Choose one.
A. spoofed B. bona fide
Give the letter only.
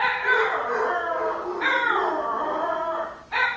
B